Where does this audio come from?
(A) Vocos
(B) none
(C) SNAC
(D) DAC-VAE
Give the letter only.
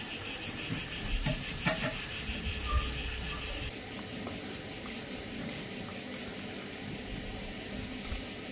B